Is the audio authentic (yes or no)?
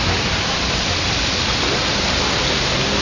yes